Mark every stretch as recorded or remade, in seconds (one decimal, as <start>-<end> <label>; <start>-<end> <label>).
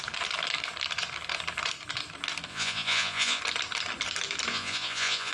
0.0-2.5 recorded; 2.5-3.4 remade; 3.4-4.5 recorded; 4.5-5.3 remade